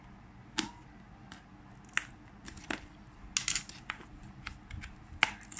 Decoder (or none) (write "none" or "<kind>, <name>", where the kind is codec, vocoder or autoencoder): none